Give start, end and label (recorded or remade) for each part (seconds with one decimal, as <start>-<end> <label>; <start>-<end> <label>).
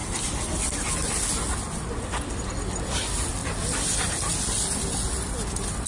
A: 0.0-5.9 recorded